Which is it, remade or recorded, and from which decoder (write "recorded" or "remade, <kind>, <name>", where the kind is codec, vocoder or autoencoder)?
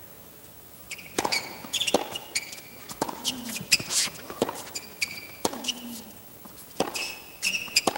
remade, vocoder, Vocos